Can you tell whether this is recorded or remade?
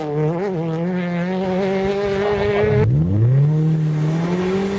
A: recorded